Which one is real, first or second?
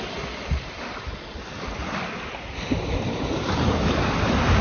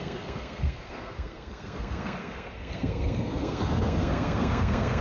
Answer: first